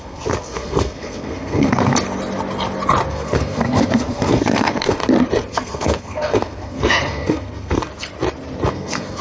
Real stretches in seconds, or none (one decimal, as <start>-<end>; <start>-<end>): 1.9-3.1; 5.0-5.5; 7.8-8.7